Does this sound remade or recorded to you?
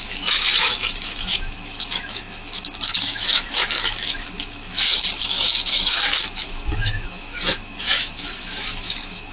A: remade